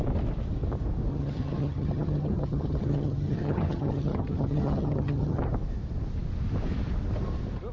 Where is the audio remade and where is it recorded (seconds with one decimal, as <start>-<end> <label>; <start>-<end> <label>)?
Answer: 0.0-1.1 recorded; 1.1-5.4 remade; 5.4-7.7 recorded